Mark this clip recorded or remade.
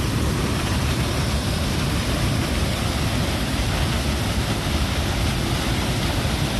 recorded